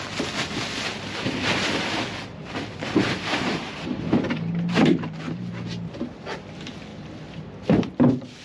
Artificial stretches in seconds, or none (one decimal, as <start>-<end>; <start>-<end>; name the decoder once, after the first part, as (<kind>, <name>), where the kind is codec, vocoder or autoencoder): 2.4-5.5 (vocoder, BigVGAN v2)